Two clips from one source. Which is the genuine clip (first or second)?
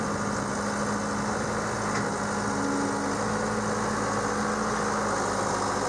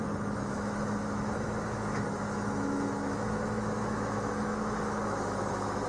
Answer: first